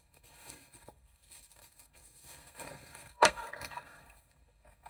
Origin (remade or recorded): remade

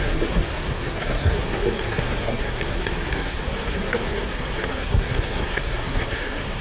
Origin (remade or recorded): remade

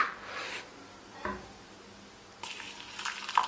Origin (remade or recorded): recorded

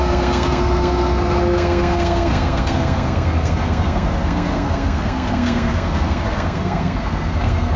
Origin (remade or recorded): remade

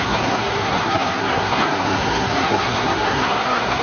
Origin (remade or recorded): remade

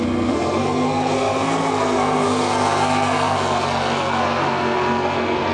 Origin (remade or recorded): remade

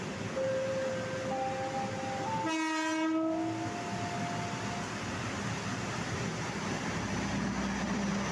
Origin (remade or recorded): recorded